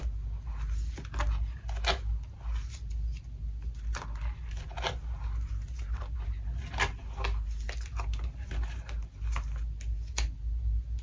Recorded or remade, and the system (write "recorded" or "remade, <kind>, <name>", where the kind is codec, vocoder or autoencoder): recorded